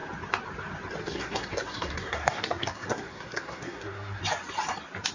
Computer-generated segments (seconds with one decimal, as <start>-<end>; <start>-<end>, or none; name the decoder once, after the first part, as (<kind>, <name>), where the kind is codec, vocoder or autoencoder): 1.0-4.2 (codec, SNAC)